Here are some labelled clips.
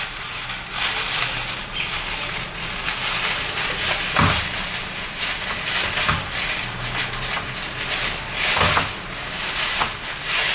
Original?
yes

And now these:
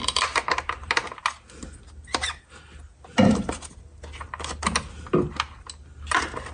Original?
yes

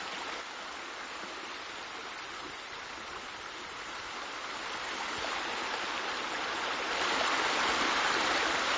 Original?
yes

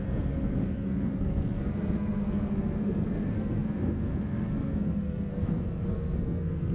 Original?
no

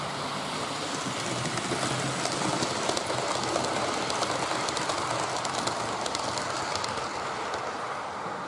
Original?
yes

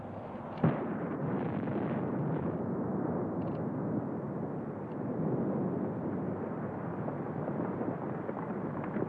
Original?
yes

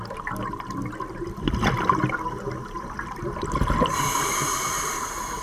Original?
yes